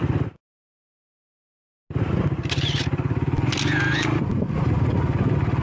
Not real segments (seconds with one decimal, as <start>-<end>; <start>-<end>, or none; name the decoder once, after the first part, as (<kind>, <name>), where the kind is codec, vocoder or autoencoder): none